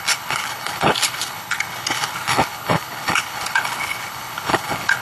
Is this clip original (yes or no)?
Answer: no